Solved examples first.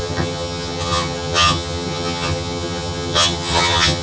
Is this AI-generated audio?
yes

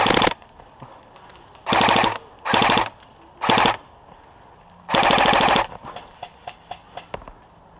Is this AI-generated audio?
no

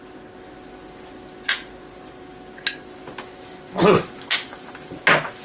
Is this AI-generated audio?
no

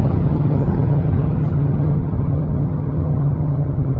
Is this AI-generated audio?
yes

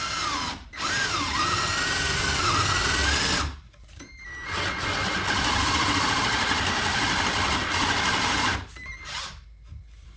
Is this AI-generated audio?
no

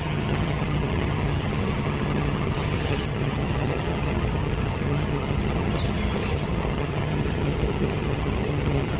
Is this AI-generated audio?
yes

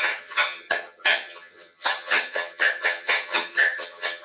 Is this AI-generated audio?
yes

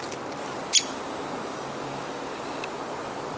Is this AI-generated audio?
no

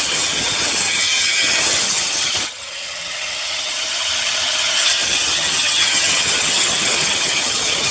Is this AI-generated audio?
yes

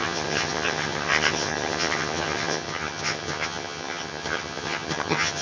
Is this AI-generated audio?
yes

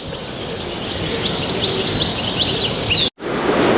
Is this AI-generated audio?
no